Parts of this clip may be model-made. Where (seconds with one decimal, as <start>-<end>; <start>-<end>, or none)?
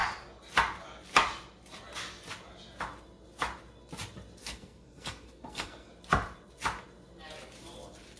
4.4-5.9